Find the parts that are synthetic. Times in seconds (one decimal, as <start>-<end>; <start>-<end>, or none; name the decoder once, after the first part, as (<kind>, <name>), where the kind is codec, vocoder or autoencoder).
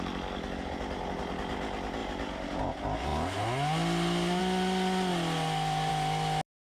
none